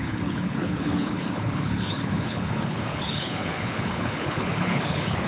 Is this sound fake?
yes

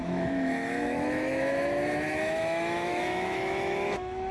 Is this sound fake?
yes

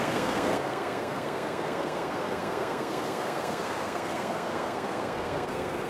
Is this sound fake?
yes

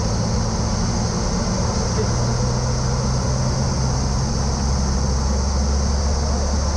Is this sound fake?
no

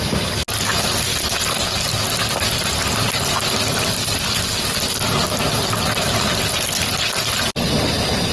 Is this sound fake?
no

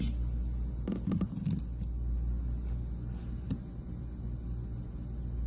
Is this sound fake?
no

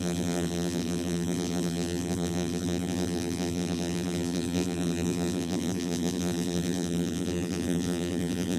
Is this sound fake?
yes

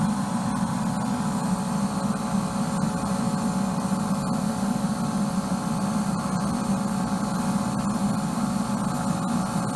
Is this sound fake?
no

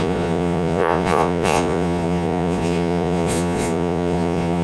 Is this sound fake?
yes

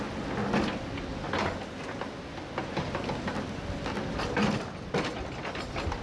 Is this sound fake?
no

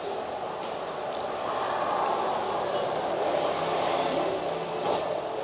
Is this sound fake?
no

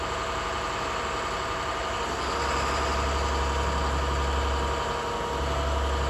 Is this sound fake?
no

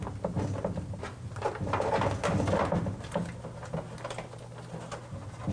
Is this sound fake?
no